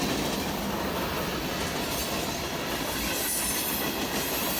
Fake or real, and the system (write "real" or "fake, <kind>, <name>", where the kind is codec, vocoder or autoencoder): real